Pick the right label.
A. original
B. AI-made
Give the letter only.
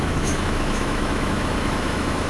B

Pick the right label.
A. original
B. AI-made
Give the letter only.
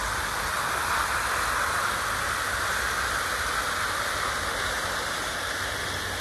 A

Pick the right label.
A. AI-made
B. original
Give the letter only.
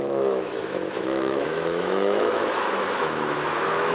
A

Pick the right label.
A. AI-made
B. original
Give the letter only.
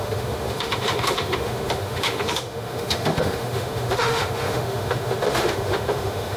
A